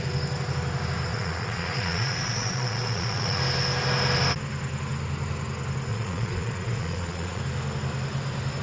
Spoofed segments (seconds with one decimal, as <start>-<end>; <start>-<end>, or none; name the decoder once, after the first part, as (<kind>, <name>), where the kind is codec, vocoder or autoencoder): 1.1-3.4 (vocoder, Vocos); 5.9-7.4